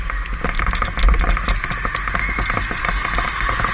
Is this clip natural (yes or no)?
yes